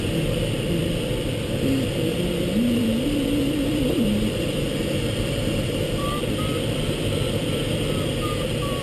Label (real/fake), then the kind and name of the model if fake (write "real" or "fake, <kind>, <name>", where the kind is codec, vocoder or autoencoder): fake, vocoder, BigVGAN v2